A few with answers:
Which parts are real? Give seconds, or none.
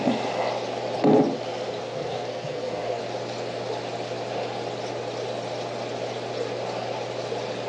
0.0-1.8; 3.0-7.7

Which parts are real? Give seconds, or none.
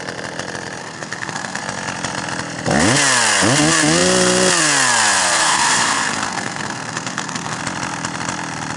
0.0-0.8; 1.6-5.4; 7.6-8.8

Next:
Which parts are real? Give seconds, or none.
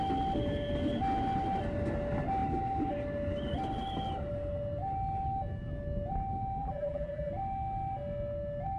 0.0-6.6; 7.3-8.8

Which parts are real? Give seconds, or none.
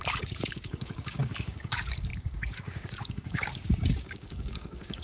none